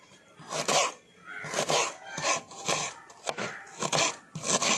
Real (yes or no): yes